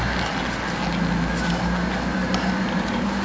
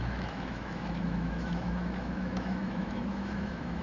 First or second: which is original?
first